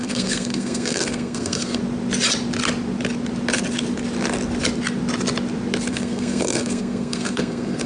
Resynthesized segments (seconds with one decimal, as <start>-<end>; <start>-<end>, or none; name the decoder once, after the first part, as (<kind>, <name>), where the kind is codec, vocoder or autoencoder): 0.0-1.8 (codec, SNAC); 5.9-7.9